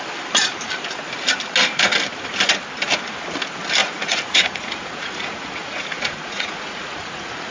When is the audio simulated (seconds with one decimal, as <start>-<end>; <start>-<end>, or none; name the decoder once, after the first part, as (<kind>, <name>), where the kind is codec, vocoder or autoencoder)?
3.8-7.5 (vocoder, Vocos)